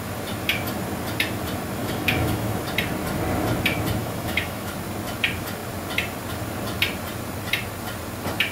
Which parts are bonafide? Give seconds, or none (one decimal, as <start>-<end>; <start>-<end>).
0.0-1.8; 2.6-4.0; 4.7-8.5